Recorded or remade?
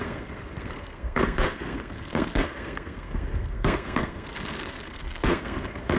remade